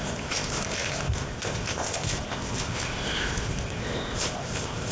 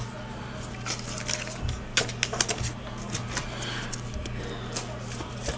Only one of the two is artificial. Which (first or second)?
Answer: first